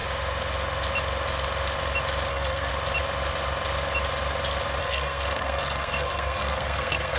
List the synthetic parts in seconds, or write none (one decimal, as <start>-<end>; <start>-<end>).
2.3-2.7; 4.8-7.2